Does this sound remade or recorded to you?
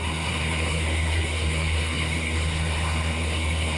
remade